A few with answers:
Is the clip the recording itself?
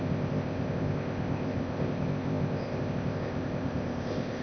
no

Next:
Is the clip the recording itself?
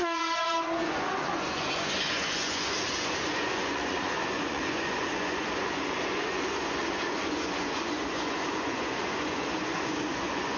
no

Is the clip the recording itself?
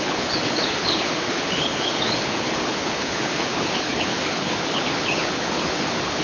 no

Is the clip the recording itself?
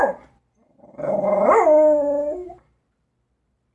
no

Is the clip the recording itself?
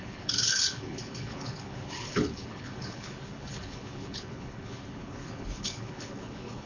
no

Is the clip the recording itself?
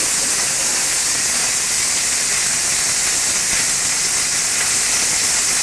yes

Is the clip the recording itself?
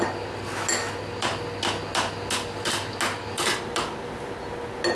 yes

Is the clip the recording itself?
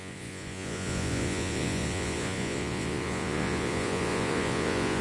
no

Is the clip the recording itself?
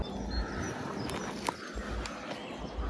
yes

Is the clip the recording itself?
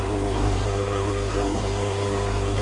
no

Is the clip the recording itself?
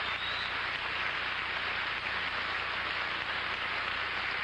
no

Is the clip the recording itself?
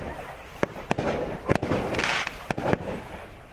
no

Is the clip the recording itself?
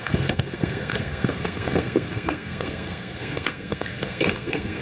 no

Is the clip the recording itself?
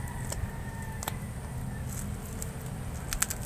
yes